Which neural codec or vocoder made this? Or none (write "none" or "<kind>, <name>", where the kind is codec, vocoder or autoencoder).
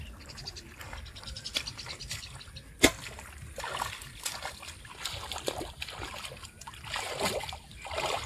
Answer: none